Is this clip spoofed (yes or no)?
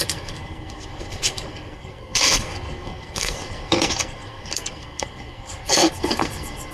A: yes